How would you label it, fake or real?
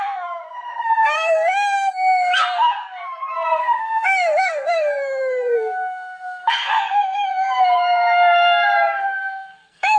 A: fake